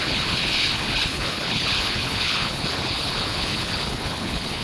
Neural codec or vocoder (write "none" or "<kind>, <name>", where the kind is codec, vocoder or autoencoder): codec, HILCodec